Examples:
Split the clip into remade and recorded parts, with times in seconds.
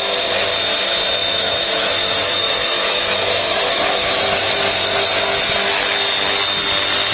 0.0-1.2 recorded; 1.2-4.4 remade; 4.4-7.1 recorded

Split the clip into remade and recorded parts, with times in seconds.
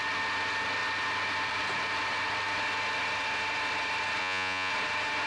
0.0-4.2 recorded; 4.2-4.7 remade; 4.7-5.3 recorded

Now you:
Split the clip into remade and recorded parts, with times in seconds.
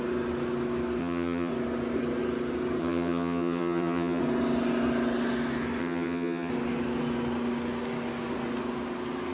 0.0-1.0 recorded; 1.0-1.5 remade; 1.5-2.8 recorded; 2.8-4.2 remade; 4.2-5.8 recorded; 5.8-6.5 remade; 6.5-9.3 recorded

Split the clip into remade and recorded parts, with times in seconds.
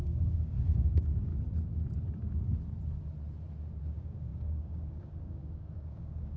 0.0-1.3 remade; 1.3-3.8 recorded; 3.8-6.4 remade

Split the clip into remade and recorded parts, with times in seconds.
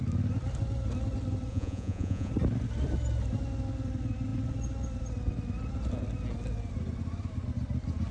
0.0-1.5 recorded; 1.5-2.3 remade; 2.3-8.1 recorded